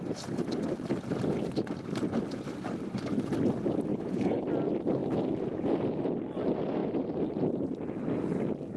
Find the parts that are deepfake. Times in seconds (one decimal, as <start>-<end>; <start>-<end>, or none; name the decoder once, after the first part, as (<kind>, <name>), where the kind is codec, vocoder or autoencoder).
3.9-4.4 (codec, HILCodec)